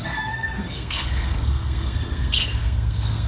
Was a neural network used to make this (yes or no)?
yes